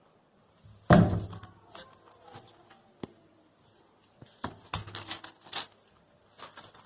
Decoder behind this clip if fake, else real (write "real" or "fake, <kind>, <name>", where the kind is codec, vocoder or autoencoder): real